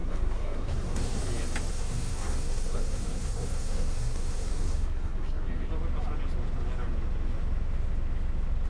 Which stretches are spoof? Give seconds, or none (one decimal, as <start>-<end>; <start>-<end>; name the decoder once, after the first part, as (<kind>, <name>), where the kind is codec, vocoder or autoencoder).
0.0-1.2 (codec, SNAC); 1.7-5.7

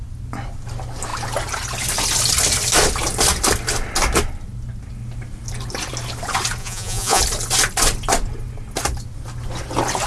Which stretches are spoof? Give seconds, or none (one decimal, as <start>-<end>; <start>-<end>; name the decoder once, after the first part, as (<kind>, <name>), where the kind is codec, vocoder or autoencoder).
6.6-7.2 (vocoder, Vocos)

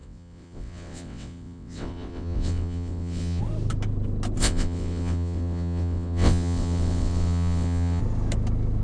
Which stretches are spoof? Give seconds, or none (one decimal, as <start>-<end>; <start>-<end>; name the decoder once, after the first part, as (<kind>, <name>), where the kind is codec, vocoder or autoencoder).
0.0-3.4 (vocoder, WaveNeXt); 4.4-8.0

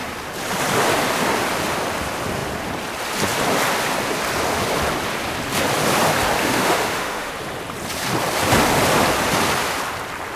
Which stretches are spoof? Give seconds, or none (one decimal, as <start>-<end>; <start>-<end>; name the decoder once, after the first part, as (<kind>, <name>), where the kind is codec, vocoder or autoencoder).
6.4-7.3 (autoencoder, DAC-VAE)

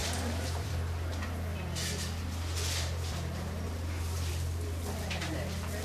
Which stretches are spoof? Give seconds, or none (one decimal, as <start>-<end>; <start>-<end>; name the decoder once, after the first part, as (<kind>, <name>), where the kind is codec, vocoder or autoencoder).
0.0-0.7 (vocoder, BigVGAN v2); 1.5-4.3

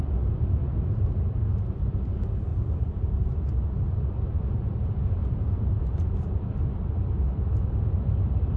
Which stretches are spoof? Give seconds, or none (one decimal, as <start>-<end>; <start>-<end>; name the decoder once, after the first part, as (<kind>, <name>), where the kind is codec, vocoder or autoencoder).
0.6-1.1 (vocoder, BigVGAN v2); 2.5-3.0